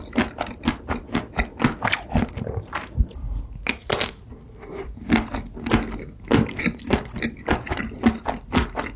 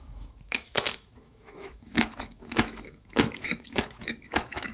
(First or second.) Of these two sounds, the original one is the first